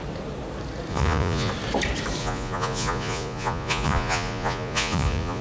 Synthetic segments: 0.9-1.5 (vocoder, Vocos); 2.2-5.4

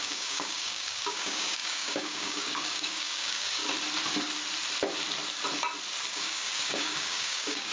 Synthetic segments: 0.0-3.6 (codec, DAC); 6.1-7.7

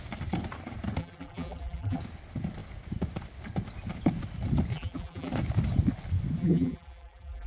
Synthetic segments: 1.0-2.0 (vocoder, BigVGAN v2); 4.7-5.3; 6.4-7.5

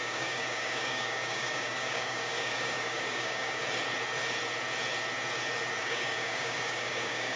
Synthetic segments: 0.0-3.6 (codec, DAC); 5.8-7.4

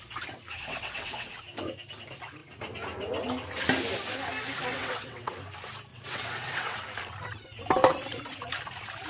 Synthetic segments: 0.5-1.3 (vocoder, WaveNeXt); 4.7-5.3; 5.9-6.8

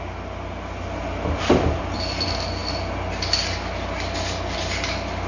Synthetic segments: none